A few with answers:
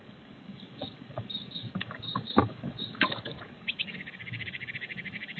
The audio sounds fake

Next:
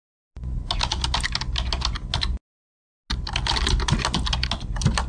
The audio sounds real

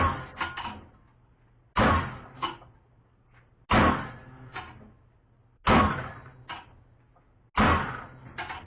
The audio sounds real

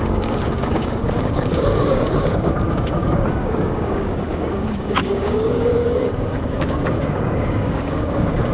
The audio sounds fake